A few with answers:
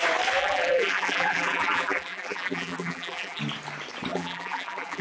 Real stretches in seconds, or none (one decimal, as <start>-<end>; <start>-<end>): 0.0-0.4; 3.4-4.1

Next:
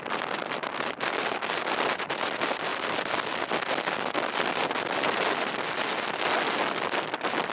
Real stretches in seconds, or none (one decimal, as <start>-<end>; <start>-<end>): 0.0-7.5

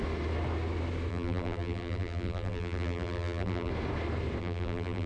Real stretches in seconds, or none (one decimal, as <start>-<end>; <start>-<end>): 0.0-1.1; 3.7-4.4

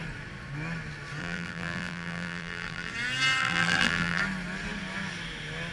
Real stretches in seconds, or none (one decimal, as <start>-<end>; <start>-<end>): 0.0-1.2; 2.9-3.4; 4.2-5.7

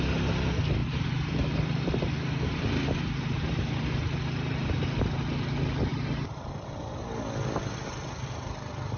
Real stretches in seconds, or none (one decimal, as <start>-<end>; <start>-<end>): 0.0-0.8; 3.7-5.9; 7.0-9.0